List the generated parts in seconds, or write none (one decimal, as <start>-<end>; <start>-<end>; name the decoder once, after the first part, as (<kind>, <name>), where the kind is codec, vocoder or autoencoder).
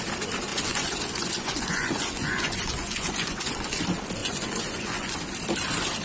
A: 0.5-3.8 (vocoder, Vocos); 4.2-5.1